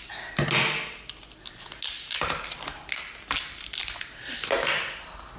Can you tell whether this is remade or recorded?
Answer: recorded